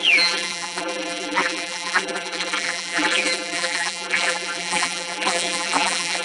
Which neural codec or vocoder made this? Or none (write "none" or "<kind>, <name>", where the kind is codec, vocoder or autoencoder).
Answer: vocoder, BigVGAN v2